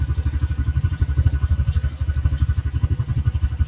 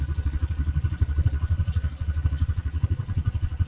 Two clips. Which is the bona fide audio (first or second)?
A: first